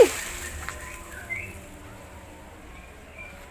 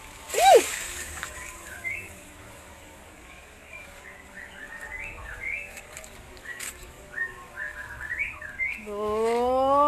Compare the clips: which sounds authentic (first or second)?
first